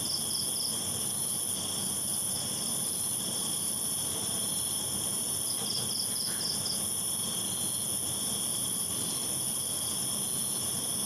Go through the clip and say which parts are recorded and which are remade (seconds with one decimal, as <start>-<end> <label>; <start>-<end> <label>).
0.0-2.1 recorded; 2.1-5.5 remade; 5.5-8.5 recorded; 8.5-9.1 remade; 9.1-11.1 recorded